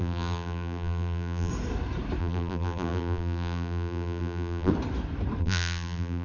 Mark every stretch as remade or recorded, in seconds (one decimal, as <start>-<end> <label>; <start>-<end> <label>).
0.0-1.5 remade; 1.5-2.2 recorded; 2.2-4.7 remade; 4.7-5.4 recorded; 5.4-6.2 remade